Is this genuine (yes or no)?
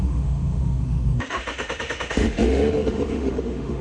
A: no